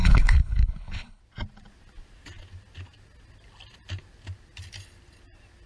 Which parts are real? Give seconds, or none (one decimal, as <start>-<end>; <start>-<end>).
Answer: 1.2-5.7